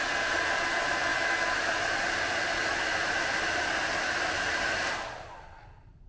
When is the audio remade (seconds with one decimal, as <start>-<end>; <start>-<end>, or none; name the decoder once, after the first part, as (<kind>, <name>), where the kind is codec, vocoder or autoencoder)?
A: none